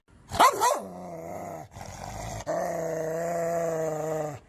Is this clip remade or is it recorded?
recorded